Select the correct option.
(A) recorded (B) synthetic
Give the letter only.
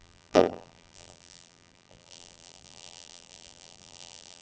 B